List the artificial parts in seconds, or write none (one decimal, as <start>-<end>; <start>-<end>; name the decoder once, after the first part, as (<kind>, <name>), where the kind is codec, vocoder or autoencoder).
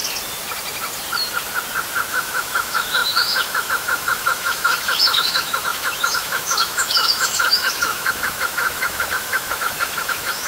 2.1-10.5 (autoencoder, DAC-VAE)